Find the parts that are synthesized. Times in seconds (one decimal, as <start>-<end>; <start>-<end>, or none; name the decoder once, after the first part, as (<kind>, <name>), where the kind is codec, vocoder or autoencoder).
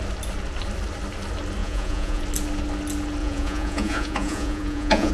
1.6-2.2 (vocoder, Vocos); 3.2-5.1